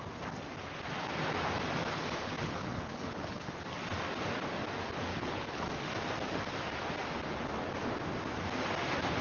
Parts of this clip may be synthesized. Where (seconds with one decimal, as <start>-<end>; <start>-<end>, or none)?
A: 2.2-3.5; 5.1-5.6